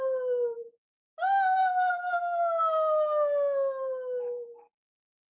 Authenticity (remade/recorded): recorded